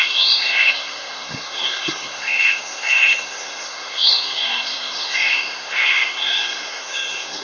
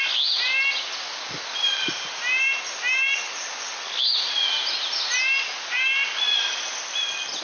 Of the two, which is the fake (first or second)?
first